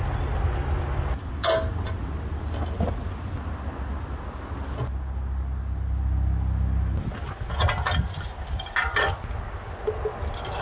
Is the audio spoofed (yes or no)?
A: no